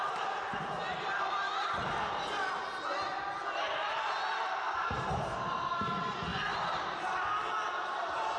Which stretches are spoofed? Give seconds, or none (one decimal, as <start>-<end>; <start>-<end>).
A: none